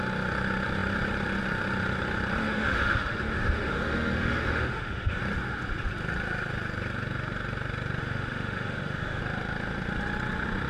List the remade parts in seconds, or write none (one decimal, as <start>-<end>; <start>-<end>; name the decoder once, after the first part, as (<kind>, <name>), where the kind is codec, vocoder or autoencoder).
2.4-5.2 (autoencoder, DAC-VAE); 8.0-9.2